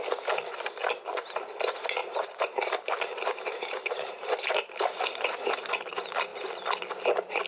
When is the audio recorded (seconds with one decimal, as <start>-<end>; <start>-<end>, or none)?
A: 0.0-2.0; 5.7-7.5

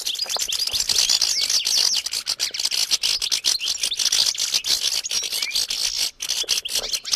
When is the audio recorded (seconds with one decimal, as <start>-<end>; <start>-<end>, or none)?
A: 0.0-7.2

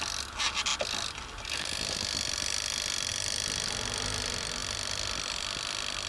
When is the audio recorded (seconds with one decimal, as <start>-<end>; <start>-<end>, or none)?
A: 0.0-6.1

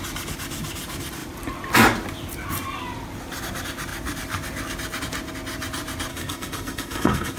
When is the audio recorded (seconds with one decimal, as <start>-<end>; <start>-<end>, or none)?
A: 0.0-6.1

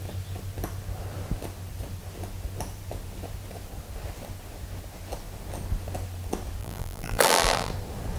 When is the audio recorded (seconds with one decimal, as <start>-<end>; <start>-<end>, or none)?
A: 0.0-6.6; 7.7-8.2

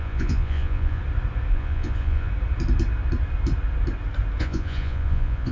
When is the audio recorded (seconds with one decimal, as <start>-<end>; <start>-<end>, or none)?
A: 1.0-1.5; 2.3-4.4

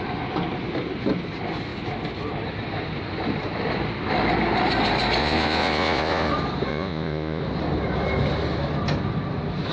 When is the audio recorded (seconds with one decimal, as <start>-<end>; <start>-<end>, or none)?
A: 0.0-5.2; 6.3-6.7; 7.4-9.7

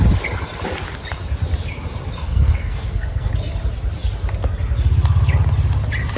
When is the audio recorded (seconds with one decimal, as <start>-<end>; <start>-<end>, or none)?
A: 0.0-2.2; 3.3-6.2